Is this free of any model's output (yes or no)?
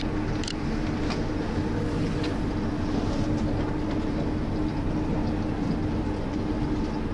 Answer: yes